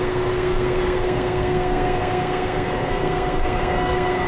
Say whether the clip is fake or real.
fake